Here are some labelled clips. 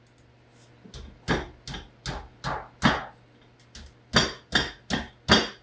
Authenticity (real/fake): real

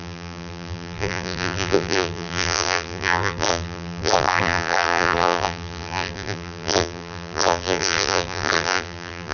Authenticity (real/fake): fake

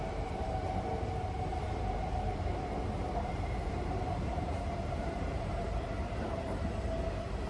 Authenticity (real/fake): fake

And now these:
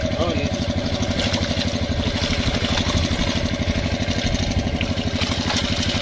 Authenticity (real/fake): real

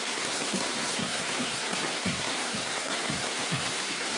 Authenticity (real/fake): fake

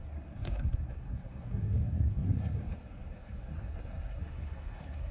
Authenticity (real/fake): fake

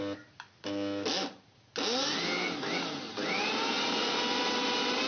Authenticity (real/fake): real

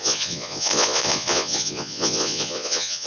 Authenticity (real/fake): fake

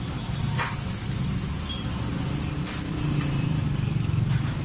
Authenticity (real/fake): real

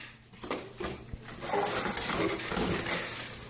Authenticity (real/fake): real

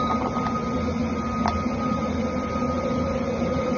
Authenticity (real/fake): real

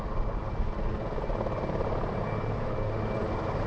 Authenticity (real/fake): real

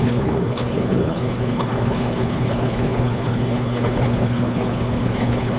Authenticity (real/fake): fake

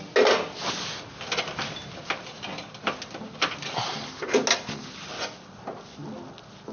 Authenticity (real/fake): real